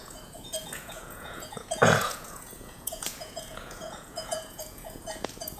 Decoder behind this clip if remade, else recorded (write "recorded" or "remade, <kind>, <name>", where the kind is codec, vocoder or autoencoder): remade, vocoder, Vocos